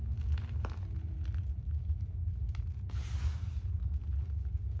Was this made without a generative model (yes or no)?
yes